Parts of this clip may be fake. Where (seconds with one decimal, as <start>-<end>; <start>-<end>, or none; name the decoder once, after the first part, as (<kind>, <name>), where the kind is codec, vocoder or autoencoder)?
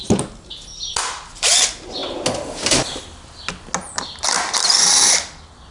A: none